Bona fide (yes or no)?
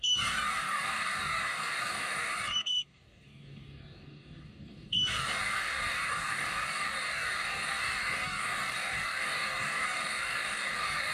no